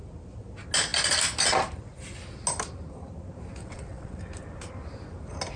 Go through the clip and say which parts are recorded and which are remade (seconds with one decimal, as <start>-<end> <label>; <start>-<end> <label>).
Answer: 0.0-3.6 recorded; 3.6-4.2 remade; 4.2-5.6 recorded